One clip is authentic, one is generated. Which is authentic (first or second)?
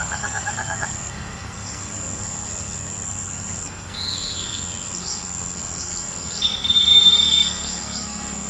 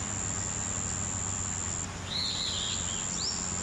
second